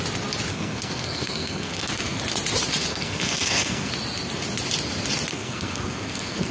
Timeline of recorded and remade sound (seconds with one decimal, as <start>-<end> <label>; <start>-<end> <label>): 0.0-0.5 recorded; 0.5-2.2 remade; 2.2-2.9 recorded; 2.9-3.9 remade; 3.9-5.3 recorded; 5.3-6.5 remade